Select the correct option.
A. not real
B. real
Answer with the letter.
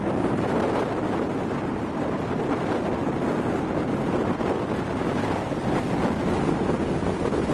B